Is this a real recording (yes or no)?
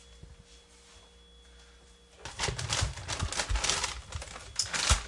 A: yes